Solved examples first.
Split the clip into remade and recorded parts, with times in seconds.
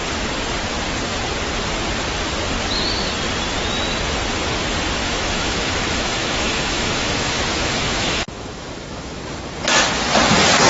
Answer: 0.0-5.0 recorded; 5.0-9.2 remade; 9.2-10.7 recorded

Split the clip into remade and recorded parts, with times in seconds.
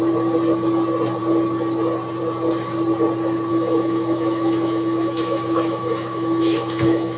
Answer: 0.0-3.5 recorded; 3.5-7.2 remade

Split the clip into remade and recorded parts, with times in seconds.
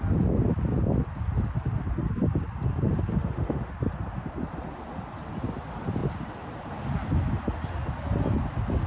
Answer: 0.0-3.1 recorded; 3.1-3.7 remade; 3.7-8.9 recorded